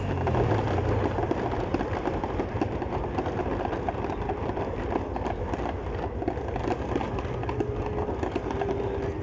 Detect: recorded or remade recorded